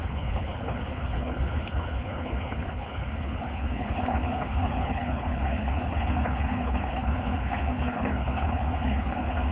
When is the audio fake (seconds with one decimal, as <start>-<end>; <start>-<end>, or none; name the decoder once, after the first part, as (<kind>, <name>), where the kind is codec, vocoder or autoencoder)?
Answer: 0.0-9.5 (codec, HILCodec)